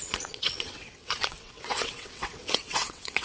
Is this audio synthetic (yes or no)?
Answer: yes